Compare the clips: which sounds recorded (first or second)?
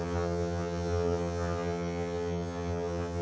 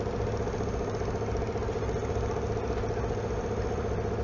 second